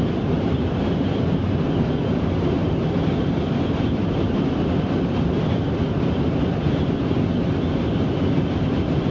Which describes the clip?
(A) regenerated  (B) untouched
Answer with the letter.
B